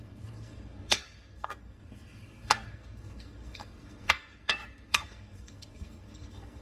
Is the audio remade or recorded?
remade